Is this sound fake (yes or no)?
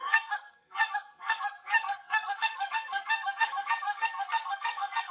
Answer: yes